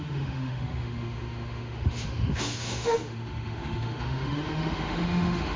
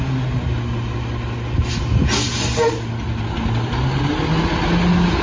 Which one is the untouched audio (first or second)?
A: second